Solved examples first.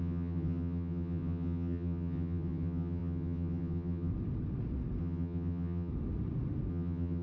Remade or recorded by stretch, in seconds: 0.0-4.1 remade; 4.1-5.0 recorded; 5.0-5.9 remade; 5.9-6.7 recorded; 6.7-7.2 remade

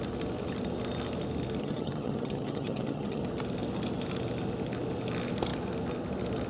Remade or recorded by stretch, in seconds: 0.0-1.6 recorded; 1.6-3.2 remade; 3.2-6.5 recorded

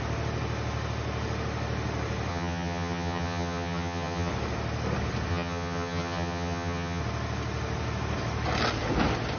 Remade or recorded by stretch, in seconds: 0.0-2.3 recorded; 2.3-4.3 remade; 4.3-5.3 recorded; 5.3-7.0 remade; 7.0-9.4 recorded

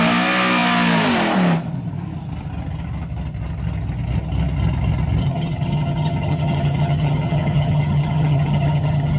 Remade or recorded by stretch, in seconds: 0.0-5.2 recorded; 5.2-9.2 remade

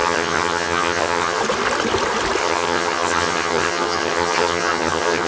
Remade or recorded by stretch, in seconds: 0.0-1.4 remade; 1.4-2.4 recorded; 2.4-5.3 remade